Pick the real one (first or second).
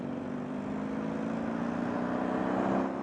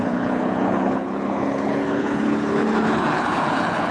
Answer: first